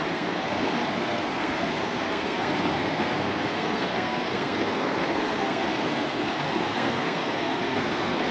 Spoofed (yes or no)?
yes